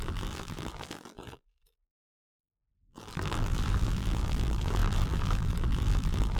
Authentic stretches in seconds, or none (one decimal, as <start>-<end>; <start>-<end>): none